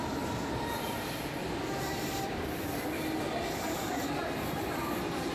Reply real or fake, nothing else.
fake